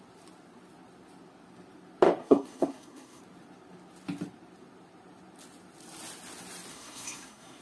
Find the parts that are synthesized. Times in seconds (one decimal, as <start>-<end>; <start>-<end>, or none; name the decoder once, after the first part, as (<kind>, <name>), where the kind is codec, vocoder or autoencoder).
2.2-3.2 (codec, SNAC); 6.7-7.6